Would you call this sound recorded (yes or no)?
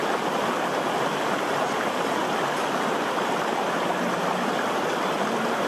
yes